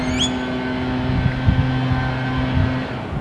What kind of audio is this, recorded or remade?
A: recorded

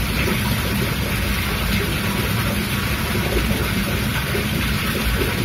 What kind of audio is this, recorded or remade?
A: recorded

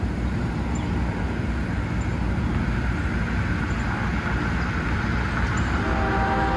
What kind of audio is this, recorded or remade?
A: recorded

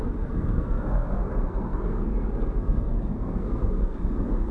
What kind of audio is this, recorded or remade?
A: remade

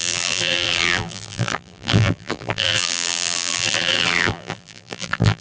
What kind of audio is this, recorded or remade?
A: remade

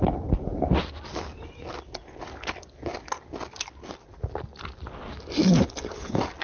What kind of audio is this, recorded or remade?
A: recorded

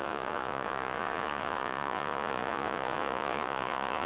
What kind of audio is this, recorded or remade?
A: remade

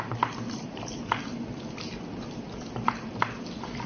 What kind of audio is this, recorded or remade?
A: recorded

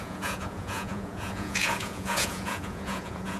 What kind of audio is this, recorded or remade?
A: remade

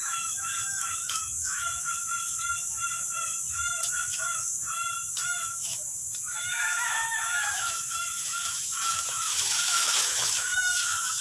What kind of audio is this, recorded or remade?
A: remade